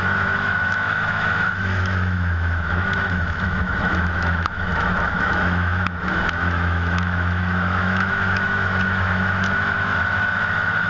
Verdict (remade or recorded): remade